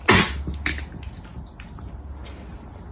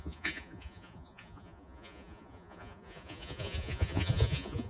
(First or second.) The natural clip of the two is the first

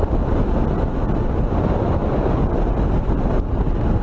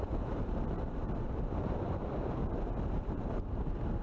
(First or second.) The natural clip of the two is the first